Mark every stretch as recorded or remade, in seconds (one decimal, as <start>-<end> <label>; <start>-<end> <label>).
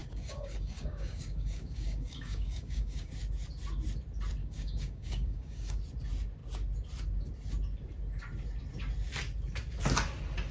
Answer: 0.0-3.1 remade; 3.1-4.4 recorded; 4.4-5.8 remade; 5.8-10.5 recorded